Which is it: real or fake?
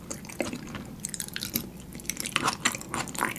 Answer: real